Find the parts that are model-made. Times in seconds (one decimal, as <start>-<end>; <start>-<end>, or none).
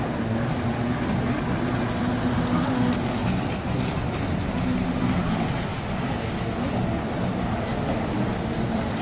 none